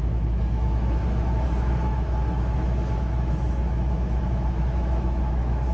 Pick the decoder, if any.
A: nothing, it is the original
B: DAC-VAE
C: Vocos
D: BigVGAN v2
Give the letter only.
B